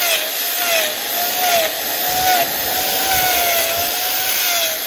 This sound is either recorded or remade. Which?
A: recorded